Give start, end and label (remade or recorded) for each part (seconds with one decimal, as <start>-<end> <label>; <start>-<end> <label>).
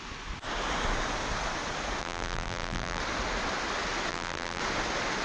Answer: 0.0-2.0 recorded; 2.0-3.0 remade; 3.0-4.1 recorded; 4.1-4.6 remade; 4.6-5.2 recorded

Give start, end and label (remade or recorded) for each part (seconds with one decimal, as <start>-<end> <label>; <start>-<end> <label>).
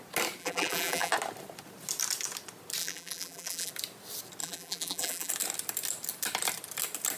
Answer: 0.0-0.4 recorded; 0.4-1.1 remade; 1.1-2.8 recorded; 2.8-3.7 remade; 3.7-4.4 recorded; 4.4-5.3 remade; 5.3-7.2 recorded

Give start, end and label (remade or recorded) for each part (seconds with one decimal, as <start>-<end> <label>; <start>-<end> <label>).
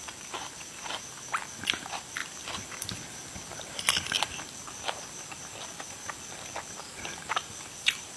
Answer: 0.0-8.2 remade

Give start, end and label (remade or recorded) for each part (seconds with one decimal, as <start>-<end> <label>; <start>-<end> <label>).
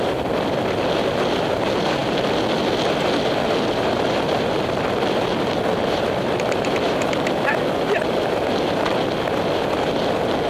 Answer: 0.0-5.7 recorded; 5.7-7.1 remade; 7.1-10.5 recorded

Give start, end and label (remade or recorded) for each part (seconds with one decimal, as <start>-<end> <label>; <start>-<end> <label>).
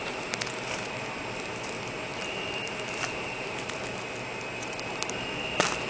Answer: 0.0-2.1 recorded; 2.1-4.0 remade; 4.0-5.9 recorded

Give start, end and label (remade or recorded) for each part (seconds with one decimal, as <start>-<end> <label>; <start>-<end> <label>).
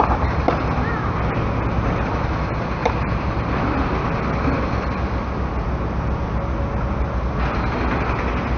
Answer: 0.0-8.6 recorded